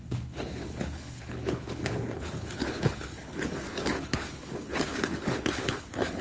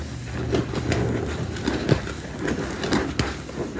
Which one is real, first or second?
second